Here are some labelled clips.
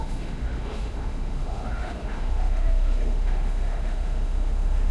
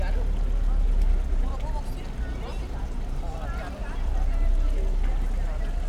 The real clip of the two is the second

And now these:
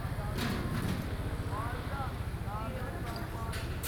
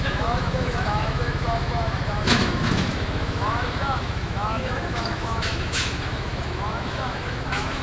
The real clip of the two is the first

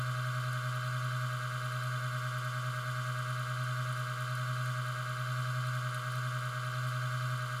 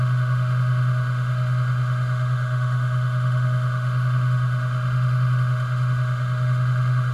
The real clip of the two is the first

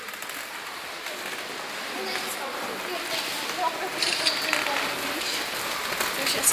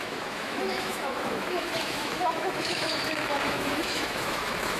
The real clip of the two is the first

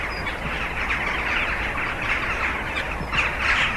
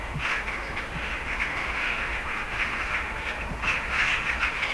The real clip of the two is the first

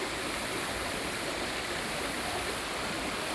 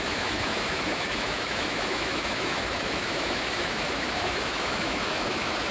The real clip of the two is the first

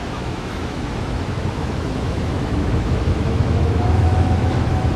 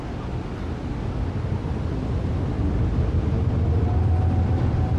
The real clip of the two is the second